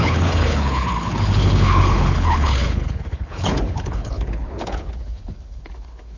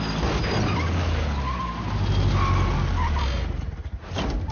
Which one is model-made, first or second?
first